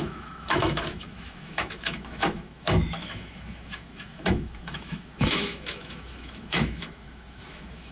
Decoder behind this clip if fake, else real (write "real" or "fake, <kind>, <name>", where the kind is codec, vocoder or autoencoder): fake, autoencoder, DAC-VAE